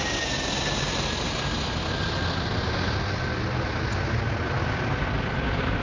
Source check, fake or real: real